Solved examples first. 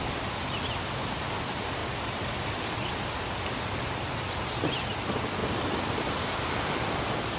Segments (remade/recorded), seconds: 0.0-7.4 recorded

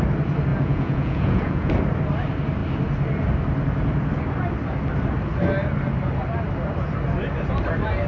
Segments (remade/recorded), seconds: 0.0-0.5 recorded; 0.5-1.7 remade; 1.7-8.1 recorded